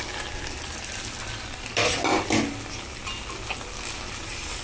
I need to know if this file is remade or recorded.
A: recorded